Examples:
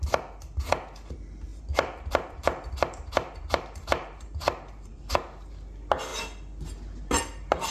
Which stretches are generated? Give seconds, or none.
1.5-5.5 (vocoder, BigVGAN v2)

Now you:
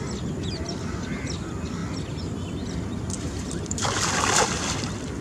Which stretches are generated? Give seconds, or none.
0.0-5.2 (vocoder, BigVGAN v2)